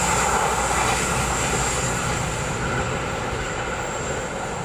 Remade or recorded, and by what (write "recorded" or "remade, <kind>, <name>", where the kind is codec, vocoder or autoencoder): recorded